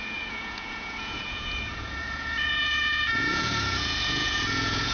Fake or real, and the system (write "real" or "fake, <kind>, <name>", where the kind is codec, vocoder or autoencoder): fake, vocoder, Vocos